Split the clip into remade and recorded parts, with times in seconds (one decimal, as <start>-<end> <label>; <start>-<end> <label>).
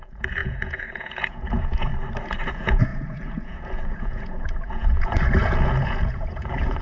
0.0-1.9 remade; 1.9-2.5 recorded; 2.5-6.8 remade